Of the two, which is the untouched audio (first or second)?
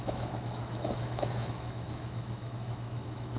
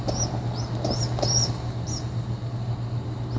second